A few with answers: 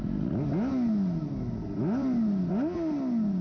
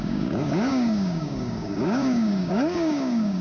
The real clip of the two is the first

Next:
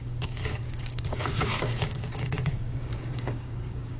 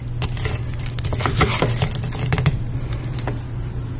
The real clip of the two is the second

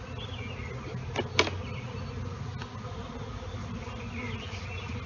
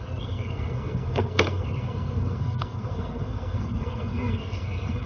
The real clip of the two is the first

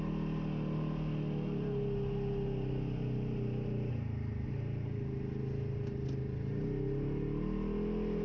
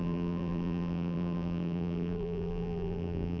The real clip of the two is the first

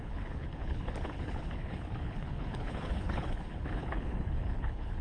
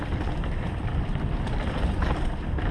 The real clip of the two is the second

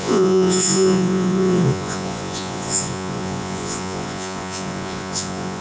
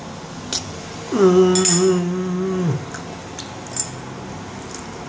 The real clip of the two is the second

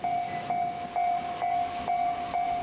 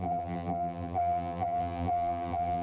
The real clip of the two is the first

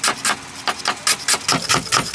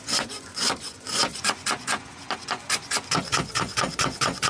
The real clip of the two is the first